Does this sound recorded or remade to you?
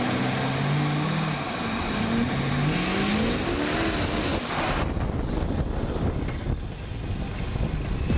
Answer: recorded